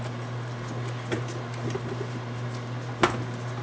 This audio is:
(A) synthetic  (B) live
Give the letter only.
B